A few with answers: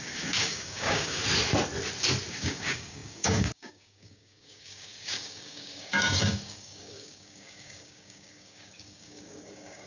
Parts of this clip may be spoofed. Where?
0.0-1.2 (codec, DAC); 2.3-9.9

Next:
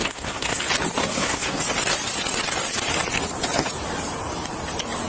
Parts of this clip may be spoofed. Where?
0.0-0.6 (codec, SNAC); 1.0-1.6

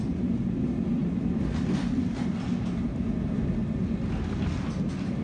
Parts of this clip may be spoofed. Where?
none

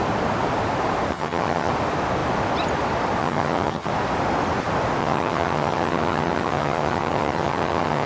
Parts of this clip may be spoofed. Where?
1.1-1.7 (vocoder, HiFi-GAN); 3.2-3.9; 5.0-8.1

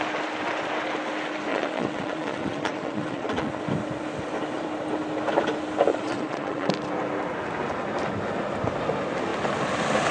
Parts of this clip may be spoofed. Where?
1.5-3.6 (vocoder, Vocos); 5.9-6.7

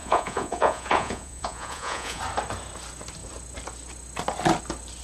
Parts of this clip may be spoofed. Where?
0.0-2.2 (vocoder, Vocos)

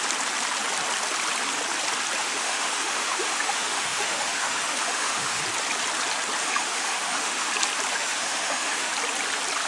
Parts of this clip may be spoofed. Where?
2.2-5.4 (autoencoder, DAC-VAE); 6.4-7.5; 7.9-8.9